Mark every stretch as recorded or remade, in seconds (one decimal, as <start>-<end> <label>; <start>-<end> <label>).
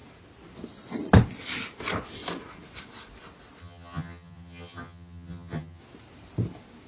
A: 0.0-3.6 recorded; 3.6-5.8 remade; 5.8-6.9 recorded